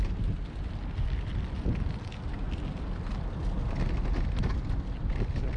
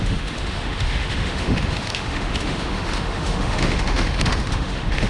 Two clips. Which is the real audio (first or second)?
first